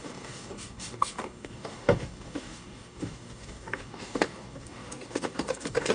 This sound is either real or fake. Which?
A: fake